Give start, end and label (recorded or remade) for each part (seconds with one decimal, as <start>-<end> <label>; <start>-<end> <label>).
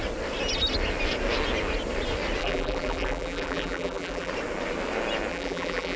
0.0-2.4 recorded; 2.4-4.3 remade; 4.3-5.3 recorded; 5.3-6.0 remade